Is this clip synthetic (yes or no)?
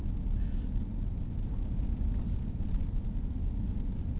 no